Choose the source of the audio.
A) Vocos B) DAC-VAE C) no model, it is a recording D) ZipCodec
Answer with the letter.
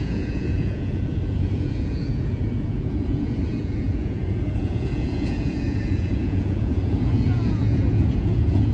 A